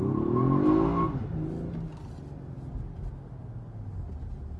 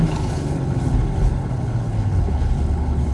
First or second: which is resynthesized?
second